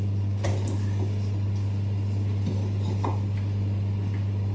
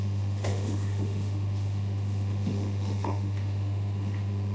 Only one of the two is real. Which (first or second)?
first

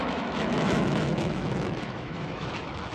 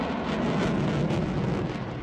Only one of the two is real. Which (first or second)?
second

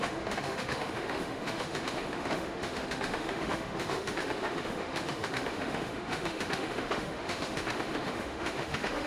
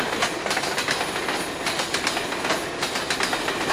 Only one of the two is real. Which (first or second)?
second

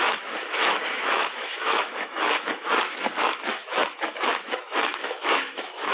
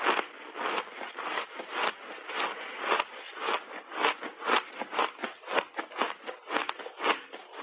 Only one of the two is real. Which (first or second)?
second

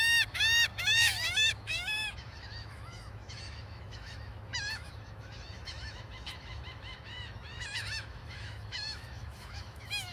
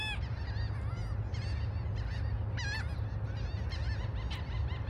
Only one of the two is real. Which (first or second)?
second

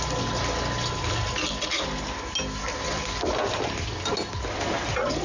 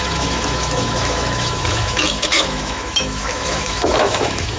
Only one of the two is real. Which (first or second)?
first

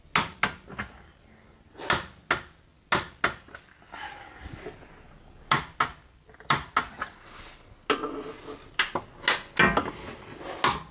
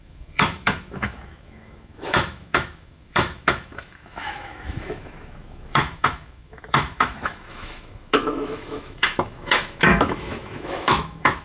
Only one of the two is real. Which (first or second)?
first